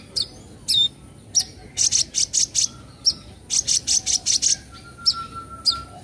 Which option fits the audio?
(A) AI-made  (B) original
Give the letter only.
B